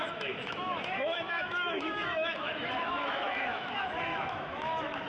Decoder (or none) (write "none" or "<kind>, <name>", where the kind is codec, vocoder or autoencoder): autoencoder, DAC-VAE